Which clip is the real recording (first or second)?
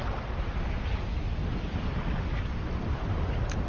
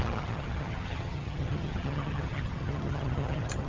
first